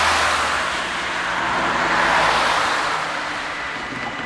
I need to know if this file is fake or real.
real